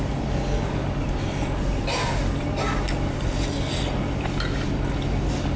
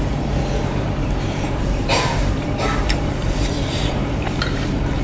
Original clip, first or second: first